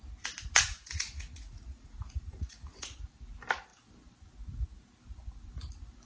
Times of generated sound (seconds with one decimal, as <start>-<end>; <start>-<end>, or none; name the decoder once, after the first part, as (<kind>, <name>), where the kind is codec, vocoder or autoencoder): 0.7-2.8 (vocoder, Vocos)